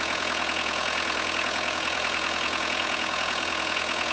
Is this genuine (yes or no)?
no